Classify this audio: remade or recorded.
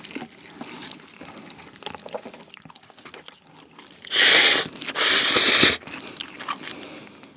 recorded